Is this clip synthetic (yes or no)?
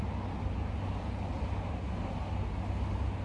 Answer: no